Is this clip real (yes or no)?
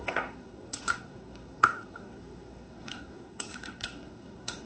no